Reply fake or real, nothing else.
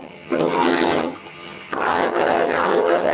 fake